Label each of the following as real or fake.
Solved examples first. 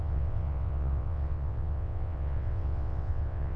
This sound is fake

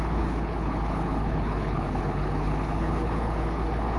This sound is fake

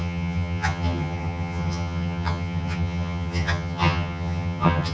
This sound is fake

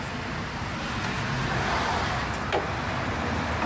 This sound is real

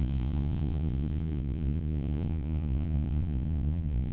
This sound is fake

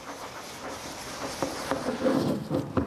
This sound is real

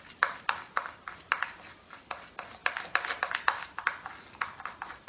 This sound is real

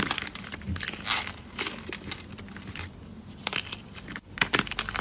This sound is real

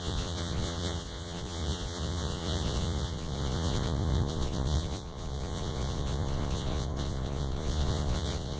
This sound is fake